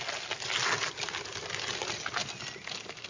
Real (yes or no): yes